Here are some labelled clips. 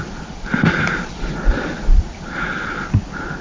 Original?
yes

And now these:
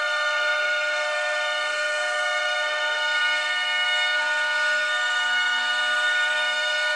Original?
no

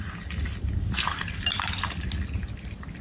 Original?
no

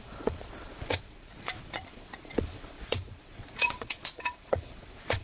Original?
no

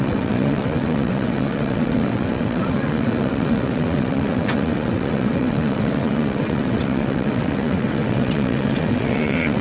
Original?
no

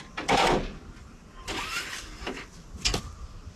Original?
yes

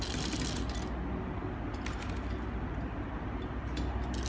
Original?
yes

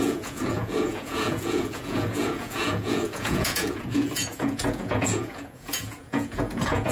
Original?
no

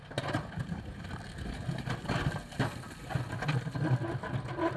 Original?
yes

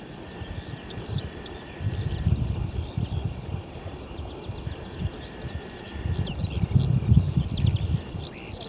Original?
yes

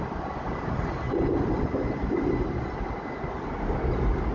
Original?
yes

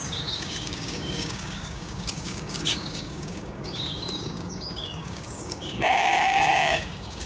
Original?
no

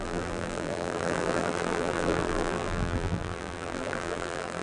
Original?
no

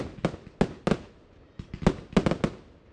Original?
yes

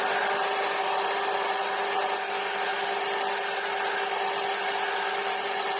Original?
yes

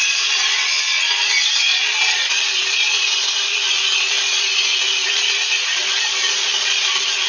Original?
no